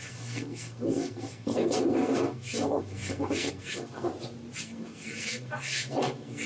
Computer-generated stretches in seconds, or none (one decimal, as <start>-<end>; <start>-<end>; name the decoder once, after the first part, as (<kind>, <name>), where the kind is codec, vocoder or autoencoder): 0.0-4.1 (codec, SNAC); 4.6-6.5